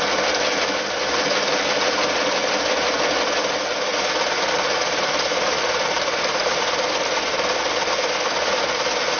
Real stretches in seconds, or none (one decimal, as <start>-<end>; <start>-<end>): 0.0-3.9; 7.6-9.2